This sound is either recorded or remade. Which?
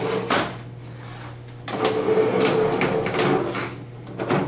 recorded